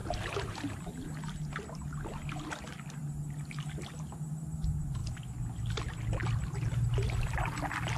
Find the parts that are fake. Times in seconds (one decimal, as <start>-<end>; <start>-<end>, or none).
0.0-0.8

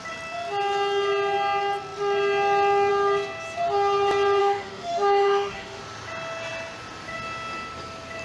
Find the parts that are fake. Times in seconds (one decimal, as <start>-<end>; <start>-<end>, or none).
4.4-5.8

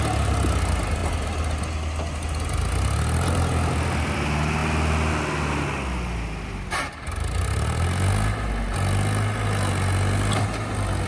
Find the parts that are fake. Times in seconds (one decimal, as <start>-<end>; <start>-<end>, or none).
none

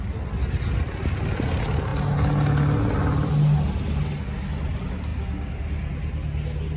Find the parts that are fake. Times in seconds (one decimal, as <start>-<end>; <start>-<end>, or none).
none